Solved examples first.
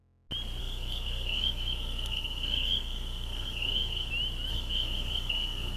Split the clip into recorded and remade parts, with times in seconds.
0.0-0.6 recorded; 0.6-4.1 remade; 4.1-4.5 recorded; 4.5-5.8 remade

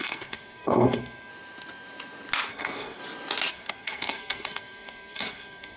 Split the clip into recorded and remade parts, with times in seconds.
0.0-1.3 remade; 1.3-2.5 recorded; 2.5-3.0 remade; 3.0-3.5 recorded; 3.5-5.8 remade

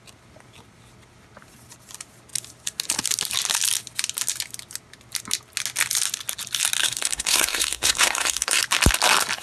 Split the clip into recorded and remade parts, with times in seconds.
0.0-6.8 recorded; 6.8-8.6 remade; 8.6-9.4 recorded

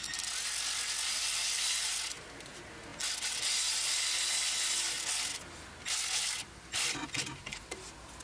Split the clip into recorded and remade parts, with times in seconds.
0.0-8.2 recorded

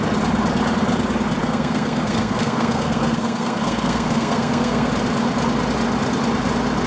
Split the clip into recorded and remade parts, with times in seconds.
0.0-1.4 recorded; 1.4-4.9 remade; 4.9-6.9 recorded

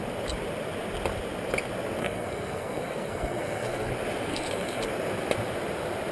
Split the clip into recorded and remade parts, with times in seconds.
0.0-2.0 recorded; 2.0-3.9 remade; 3.9-4.3 recorded; 4.3-4.9 remade; 4.9-6.1 recorded